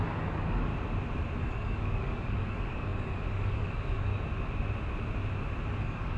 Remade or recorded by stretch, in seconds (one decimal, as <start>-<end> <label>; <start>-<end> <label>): 0.0-0.7 remade; 0.7-1.4 recorded; 1.4-4.1 remade; 4.1-5.8 recorded; 5.8-6.2 remade